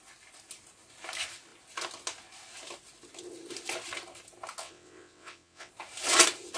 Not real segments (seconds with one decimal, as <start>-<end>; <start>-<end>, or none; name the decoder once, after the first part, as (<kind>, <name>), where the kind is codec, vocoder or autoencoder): 4.6-5.7 (vocoder, WaveNeXt)